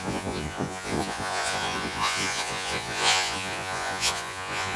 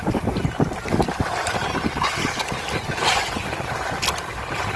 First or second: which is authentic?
second